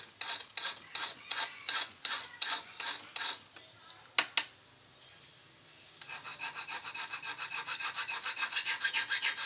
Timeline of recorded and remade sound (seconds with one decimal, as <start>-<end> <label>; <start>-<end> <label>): 0.0-1.1 recorded; 1.1-2.8 remade; 2.8-9.5 recorded